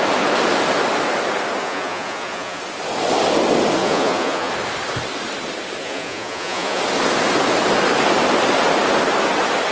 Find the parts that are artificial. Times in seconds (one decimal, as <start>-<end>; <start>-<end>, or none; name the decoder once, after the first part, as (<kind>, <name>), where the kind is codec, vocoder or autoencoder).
1.6-2.6 (vocoder, Vocos); 3.8-4.5; 5.8-6.8